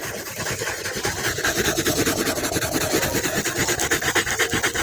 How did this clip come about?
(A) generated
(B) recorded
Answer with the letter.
B